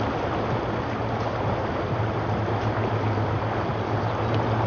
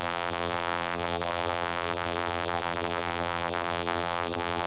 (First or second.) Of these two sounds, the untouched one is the first